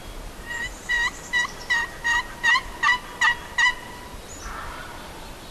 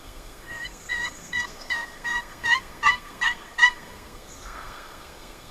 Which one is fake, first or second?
second